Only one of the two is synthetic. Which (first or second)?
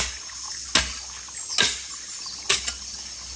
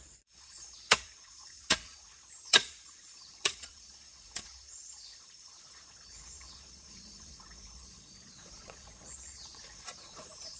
second